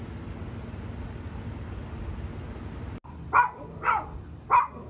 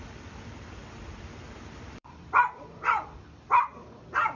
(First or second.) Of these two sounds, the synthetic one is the second